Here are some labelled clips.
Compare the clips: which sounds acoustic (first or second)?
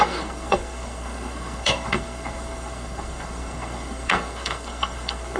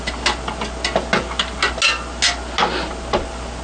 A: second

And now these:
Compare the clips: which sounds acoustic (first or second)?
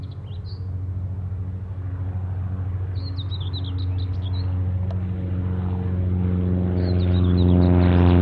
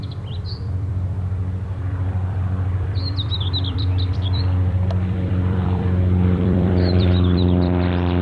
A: first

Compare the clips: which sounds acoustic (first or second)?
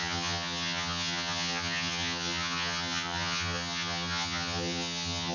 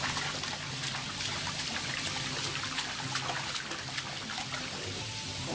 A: second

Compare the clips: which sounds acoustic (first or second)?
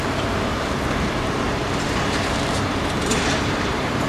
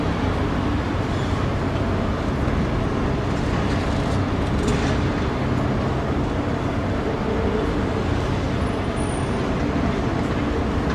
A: second